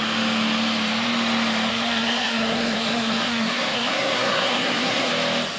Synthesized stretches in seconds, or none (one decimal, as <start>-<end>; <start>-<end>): 1.7-5.1